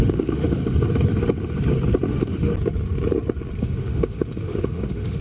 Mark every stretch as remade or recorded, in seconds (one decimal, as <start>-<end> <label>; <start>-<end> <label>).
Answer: 0.0-0.6 remade; 0.6-2.1 recorded; 2.1-2.5 remade; 2.5-3.6 recorded; 3.6-5.2 remade